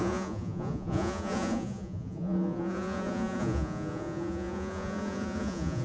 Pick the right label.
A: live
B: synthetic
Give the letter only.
B